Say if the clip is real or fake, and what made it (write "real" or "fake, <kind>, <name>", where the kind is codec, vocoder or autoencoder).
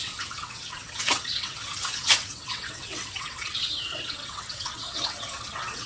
fake, vocoder, WaveNeXt